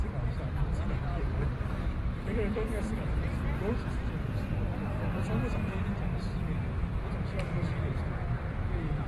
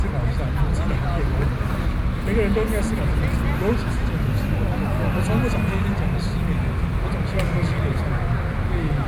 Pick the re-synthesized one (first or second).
first